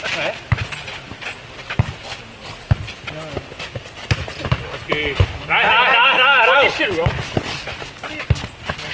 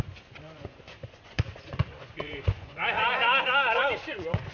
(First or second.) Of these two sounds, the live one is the first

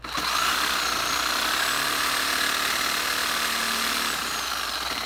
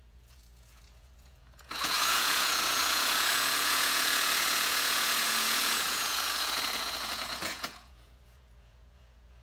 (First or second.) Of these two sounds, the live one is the first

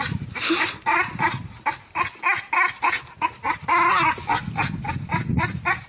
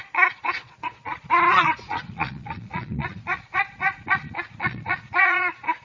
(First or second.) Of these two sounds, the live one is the first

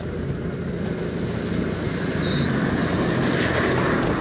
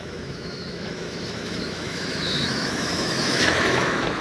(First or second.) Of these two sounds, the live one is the first